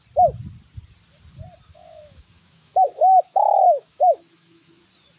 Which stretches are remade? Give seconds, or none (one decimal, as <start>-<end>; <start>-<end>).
1.7-4.8